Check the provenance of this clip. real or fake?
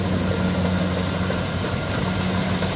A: real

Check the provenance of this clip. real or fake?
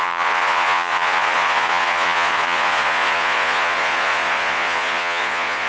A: fake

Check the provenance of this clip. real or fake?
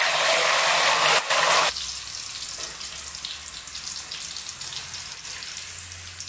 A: real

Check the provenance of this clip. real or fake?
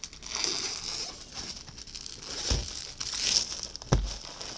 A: real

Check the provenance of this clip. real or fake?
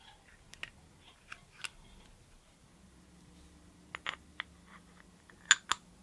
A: real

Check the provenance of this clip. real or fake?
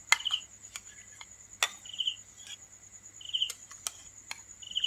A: real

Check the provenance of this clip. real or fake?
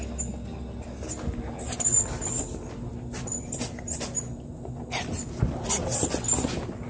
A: real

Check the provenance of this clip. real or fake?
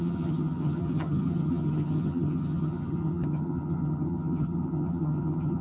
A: fake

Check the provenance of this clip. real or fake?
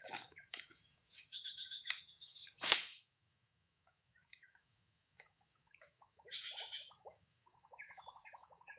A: fake